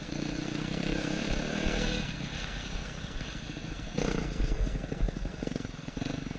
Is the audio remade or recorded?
remade